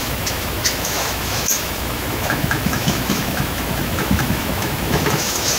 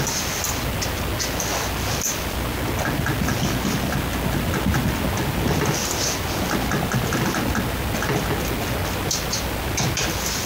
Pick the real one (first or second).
second